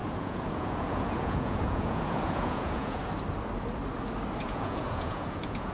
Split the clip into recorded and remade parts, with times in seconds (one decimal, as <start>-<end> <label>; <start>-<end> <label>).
0.0-3.0 remade; 3.0-4.4 recorded; 4.4-5.7 remade